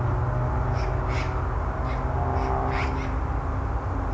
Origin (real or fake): real